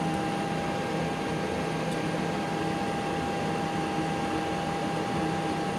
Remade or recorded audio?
recorded